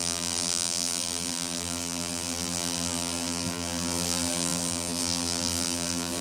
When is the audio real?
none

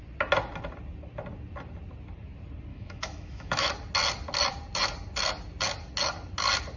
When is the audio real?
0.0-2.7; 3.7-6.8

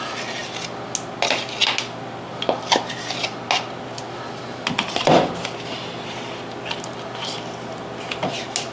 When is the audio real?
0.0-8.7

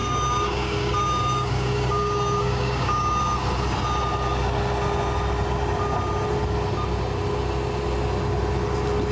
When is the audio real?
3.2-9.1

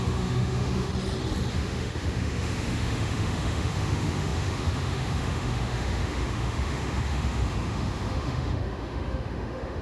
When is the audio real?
0.9-1.5

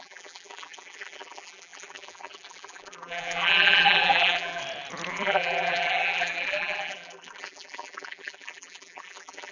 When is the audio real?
4.6-5.1

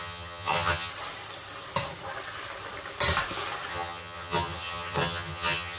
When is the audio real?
0.9-3.7